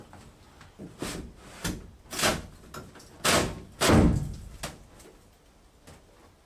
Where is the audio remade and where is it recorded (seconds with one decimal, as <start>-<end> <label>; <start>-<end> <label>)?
0.0-6.5 recorded